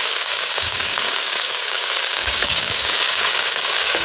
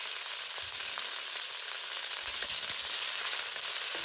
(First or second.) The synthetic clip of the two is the first